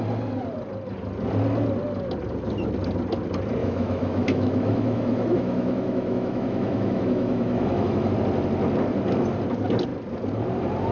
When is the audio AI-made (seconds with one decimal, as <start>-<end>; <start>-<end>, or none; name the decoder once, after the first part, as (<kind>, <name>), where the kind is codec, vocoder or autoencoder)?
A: 3.6-8.1 (autoencoder, DAC-VAE)